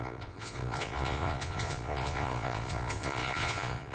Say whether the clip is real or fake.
fake